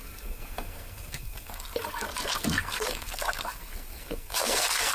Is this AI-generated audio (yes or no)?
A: yes